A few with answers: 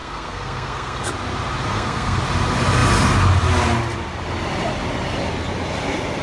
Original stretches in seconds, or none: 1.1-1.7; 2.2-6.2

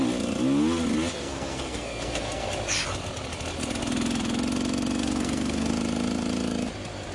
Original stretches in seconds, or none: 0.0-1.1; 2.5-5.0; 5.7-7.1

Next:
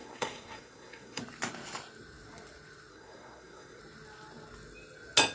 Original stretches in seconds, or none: 1.2-2.9; 3.8-5.3

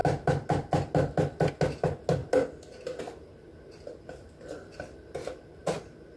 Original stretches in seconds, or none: 0.0-6.2

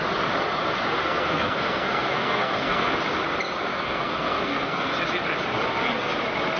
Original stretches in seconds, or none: 0.0-1.0; 2.9-3.7; 4.9-6.6

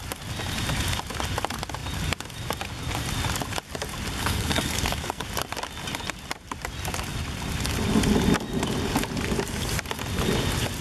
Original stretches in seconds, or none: 0.0-4.2; 5.2-10.8